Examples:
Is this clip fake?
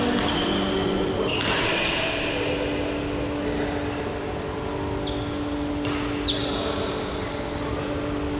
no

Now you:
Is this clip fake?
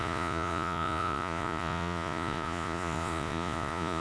yes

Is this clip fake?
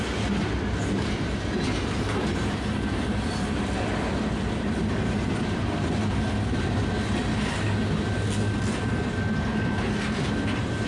no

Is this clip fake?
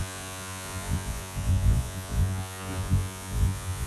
yes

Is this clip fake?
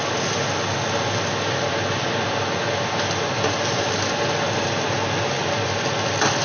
no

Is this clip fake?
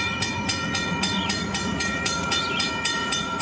yes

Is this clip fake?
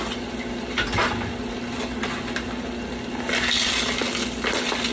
no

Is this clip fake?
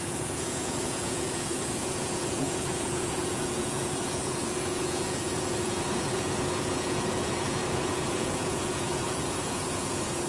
yes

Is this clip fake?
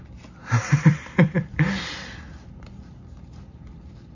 no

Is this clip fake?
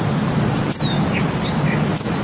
no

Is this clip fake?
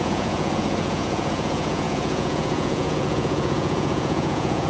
yes